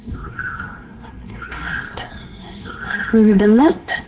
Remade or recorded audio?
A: remade